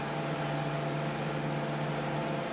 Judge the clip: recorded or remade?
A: recorded